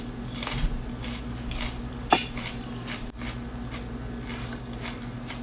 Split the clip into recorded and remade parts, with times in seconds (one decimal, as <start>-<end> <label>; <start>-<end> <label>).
0.0-4.4 recorded; 4.4-5.0 remade; 5.0-5.4 recorded